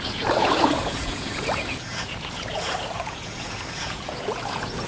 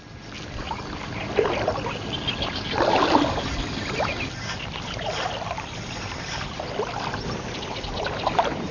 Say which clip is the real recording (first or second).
second